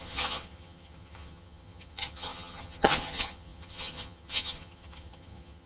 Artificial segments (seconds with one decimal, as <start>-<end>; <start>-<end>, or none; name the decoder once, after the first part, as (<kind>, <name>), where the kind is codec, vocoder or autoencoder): 0.0-5.7 (vocoder, HiFi-GAN)